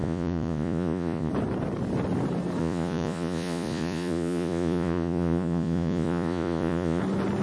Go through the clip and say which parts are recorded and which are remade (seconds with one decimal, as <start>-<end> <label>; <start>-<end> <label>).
0.0-1.3 remade; 1.3-2.6 recorded; 2.6-7.0 remade; 7.0-7.4 recorded